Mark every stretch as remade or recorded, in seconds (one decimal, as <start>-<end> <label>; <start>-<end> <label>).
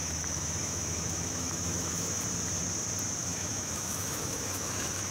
0.0-2.2 remade; 2.2-3.2 recorded; 3.2-5.1 remade